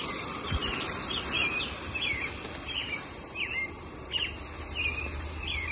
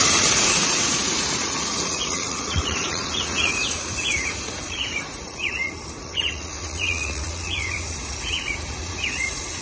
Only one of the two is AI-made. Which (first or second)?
second